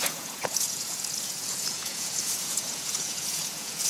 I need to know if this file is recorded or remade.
remade